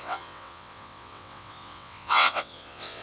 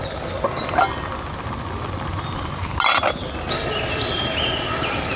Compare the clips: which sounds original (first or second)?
second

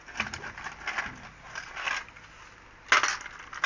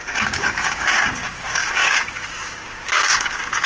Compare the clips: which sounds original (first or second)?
first